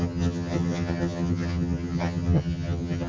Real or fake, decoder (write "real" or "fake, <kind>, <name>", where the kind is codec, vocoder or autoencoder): fake, vocoder, HiFi-GAN